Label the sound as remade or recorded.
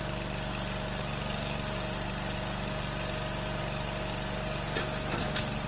recorded